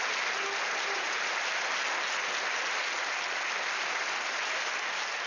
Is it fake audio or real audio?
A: real